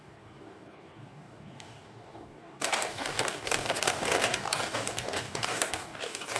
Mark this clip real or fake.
fake